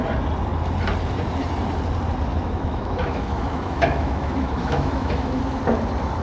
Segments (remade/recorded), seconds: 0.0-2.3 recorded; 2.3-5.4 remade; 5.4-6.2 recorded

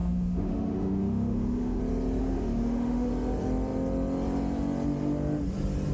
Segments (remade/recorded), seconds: 0.0-1.8 remade; 1.8-2.2 recorded; 2.2-3.1 remade; 3.1-5.9 recorded

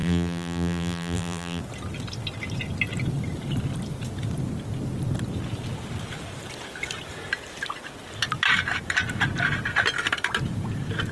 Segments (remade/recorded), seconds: 0.0-1.6 remade; 1.6-11.1 recorded

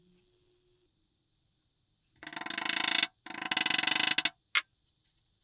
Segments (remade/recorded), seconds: 0.0-5.4 recorded

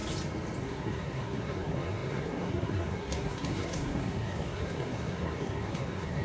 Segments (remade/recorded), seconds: 0.0-0.6 recorded; 0.6-6.2 remade

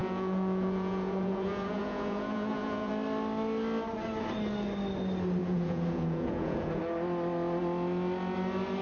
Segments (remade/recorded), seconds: 0.0-2.9 remade; 2.9-5.4 recorded; 5.4-6.8 remade; 6.8-8.8 recorded

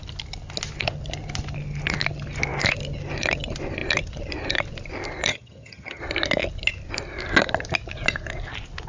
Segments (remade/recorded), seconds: 0.0-5.3 recorded; 5.3-6.0 remade; 6.0-8.9 recorded